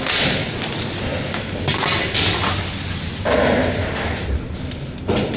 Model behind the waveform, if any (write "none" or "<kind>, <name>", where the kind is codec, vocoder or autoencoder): none